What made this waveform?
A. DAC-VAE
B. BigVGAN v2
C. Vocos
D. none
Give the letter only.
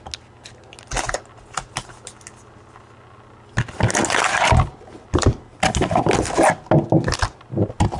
D